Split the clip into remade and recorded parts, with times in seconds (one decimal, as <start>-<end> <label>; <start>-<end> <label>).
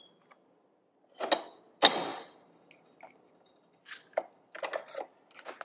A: 0.0-5.6 recorded